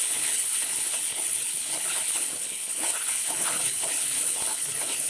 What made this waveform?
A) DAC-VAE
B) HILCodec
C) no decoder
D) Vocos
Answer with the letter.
B